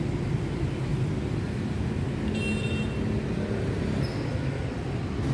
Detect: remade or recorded recorded